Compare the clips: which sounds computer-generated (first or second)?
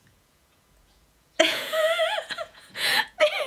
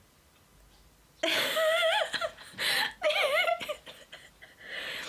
first